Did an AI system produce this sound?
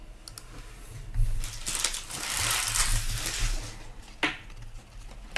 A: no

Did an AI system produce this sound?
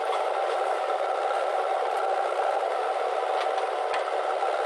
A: no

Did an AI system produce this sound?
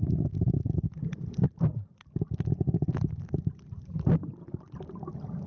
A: no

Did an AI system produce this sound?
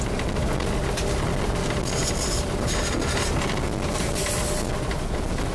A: no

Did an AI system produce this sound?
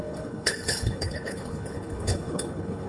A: yes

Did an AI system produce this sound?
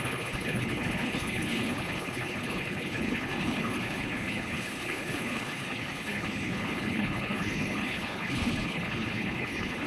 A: yes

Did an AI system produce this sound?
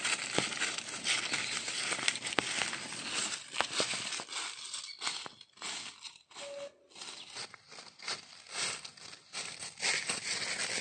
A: no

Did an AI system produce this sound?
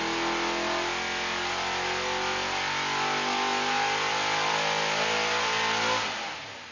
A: no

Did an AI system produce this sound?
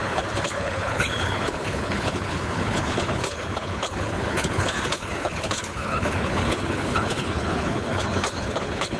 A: yes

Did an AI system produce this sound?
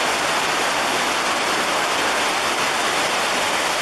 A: no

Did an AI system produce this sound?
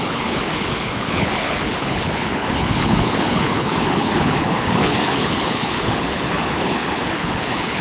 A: yes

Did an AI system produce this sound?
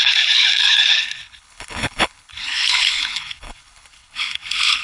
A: yes